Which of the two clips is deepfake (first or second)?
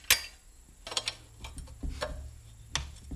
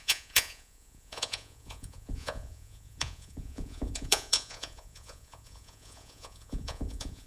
second